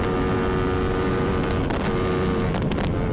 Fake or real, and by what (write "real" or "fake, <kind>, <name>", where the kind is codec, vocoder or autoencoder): real